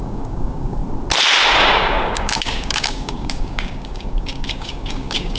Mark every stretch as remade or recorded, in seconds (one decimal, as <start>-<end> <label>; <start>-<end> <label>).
0.0-0.8 remade; 0.8-1.5 recorded; 1.5-5.4 remade